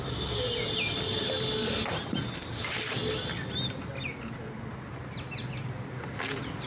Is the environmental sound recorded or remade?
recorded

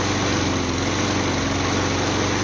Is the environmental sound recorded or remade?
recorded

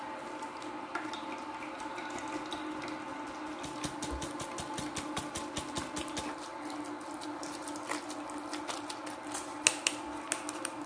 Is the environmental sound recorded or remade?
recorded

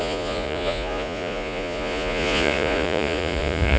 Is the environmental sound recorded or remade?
remade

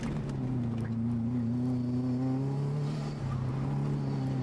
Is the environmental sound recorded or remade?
recorded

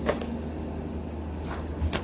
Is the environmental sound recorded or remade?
recorded